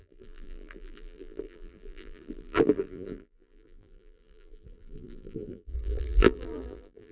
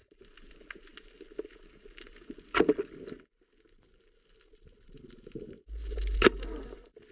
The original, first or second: second